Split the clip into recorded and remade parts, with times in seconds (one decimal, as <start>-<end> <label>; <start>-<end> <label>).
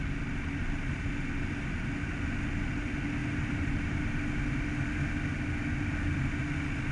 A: 0.0-3.2 recorded; 3.2-4.1 remade; 4.1-6.9 recorded